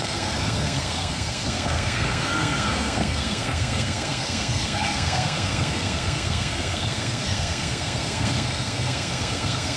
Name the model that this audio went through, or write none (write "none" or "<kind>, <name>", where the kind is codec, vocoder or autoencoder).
codec, SNAC